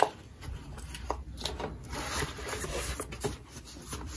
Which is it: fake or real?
real